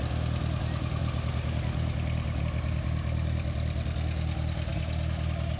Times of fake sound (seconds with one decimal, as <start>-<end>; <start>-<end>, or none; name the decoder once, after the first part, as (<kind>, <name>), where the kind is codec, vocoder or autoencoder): none